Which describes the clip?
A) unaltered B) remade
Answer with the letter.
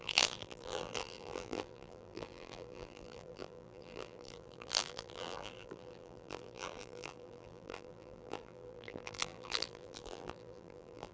B